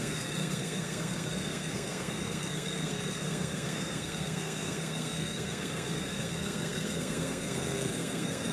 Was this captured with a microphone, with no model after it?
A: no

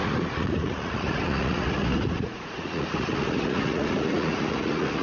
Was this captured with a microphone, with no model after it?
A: no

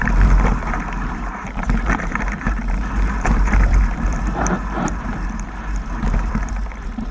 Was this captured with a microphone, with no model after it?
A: no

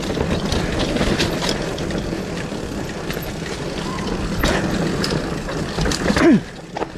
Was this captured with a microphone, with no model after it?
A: yes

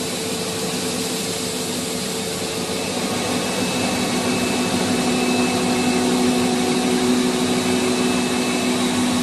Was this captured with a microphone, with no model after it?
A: yes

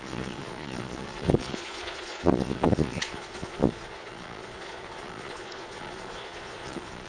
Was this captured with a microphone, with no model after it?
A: no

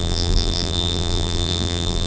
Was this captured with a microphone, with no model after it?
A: no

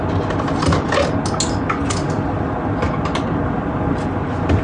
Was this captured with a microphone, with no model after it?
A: yes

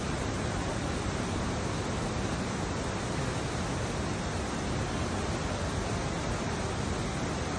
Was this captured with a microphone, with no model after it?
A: yes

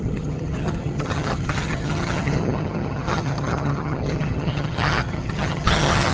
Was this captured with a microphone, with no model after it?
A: no